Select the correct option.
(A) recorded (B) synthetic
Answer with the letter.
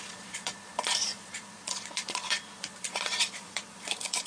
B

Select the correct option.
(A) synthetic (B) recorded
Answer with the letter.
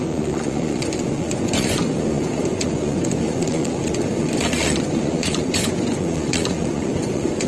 A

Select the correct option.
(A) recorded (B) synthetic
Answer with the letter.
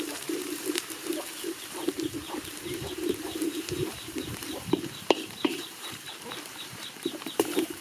B